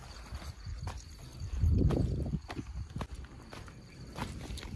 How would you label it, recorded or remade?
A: recorded